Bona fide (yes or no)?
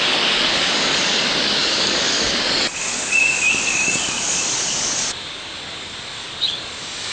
no